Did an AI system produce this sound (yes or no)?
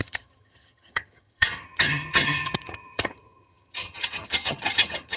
yes